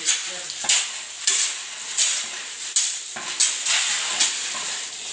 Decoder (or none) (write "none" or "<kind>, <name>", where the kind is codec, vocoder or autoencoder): none